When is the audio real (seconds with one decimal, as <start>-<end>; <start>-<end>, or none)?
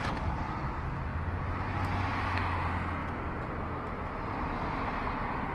0.0-5.5